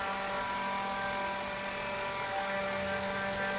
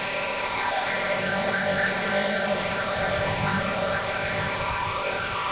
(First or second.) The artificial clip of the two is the second